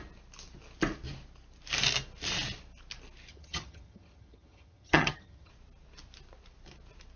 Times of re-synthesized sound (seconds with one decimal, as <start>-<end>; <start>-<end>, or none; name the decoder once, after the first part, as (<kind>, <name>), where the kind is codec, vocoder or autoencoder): 3.3-5.5 (vocoder, HiFi-GAN)